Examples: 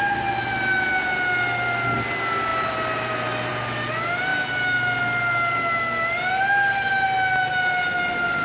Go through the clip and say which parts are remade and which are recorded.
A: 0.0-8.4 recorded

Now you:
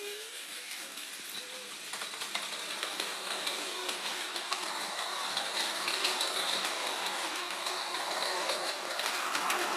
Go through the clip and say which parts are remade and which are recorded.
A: 0.0-1.1 remade; 1.1-2.8 recorded; 2.8-9.8 remade

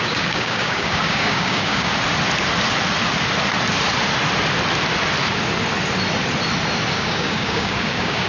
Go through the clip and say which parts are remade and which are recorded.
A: 0.0-1.9 remade; 1.9-6.9 recorded; 6.9-8.3 remade

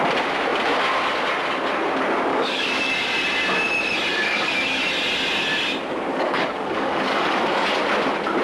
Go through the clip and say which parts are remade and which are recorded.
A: 0.0-2.3 recorded; 2.3-2.9 remade; 2.9-4.1 recorded; 4.1-4.8 remade; 4.8-6.1 recorded; 6.1-7.8 remade; 7.8-8.4 recorded

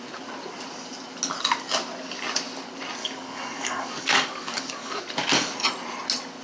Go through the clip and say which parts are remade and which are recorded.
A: 0.0-3.0 recorded; 3.0-5.0 remade; 5.0-6.4 recorded

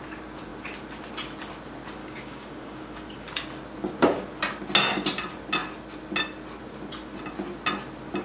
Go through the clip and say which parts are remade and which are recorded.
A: 0.0-2.0 recorded; 2.0-3.3 remade; 3.3-8.2 recorded